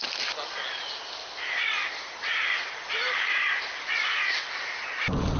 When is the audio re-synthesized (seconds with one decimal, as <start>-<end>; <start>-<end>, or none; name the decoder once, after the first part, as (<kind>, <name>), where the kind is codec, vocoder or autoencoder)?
1.2-4.4 (vocoder, BigVGAN v2)

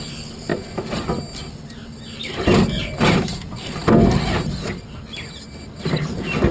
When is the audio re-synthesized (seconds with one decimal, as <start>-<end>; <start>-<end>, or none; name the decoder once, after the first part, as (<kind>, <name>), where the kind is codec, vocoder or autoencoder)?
none

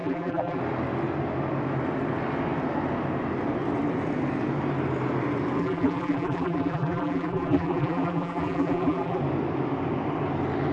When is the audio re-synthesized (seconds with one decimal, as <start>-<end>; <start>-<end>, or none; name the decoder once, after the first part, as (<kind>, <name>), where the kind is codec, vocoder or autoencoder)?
0.0-0.6 (vocoder, BigVGAN v2); 5.6-9.2

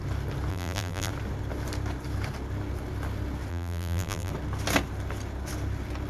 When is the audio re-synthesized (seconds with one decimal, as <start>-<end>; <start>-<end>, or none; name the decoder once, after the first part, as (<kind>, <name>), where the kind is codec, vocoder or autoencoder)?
0.5-1.1 (vocoder, BigVGAN v2); 3.5-4.3

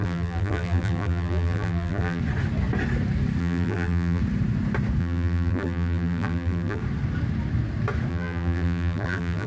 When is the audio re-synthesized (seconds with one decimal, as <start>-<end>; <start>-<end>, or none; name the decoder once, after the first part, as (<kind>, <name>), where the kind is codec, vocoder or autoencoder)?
0.0-2.2 (vocoder, BigVGAN v2); 3.4-4.2; 5.0-6.8; 8.1-9.5

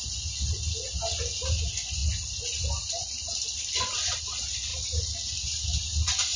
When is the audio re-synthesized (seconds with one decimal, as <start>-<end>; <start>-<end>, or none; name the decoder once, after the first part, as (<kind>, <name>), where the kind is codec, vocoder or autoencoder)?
2.0-4.2 (vocoder, BigVGAN v2)

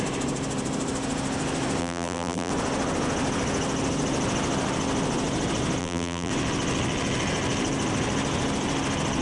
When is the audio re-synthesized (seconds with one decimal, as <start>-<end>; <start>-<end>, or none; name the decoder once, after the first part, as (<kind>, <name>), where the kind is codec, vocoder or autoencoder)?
1.8-2.5 (vocoder, BigVGAN v2); 5.8-6.3